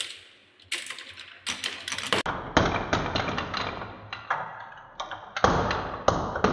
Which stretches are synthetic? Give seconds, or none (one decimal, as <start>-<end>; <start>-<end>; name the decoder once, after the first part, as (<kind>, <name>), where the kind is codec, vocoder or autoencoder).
none